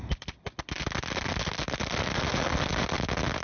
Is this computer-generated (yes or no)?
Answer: no